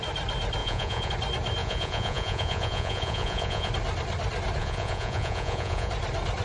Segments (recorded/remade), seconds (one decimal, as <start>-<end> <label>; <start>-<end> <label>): 0.0-0.6 recorded; 0.6-1.1 remade; 1.1-1.6 recorded; 1.6-3.7 remade; 3.7-4.6 recorded; 4.6-5.9 remade; 5.9-6.4 recorded